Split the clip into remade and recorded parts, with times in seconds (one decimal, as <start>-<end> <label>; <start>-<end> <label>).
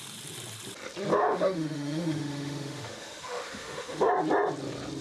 0.0-1.1 recorded; 1.1-4.1 remade; 4.1-5.0 recorded